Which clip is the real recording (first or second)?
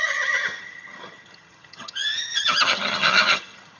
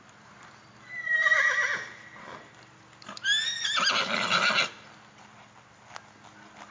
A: second